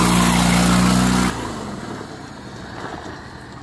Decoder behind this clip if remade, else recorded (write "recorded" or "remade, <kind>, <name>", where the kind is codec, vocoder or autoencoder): recorded